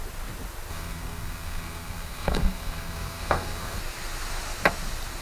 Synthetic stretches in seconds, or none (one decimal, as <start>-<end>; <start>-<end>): 0.7-3.8